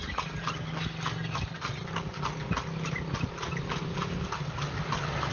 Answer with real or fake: real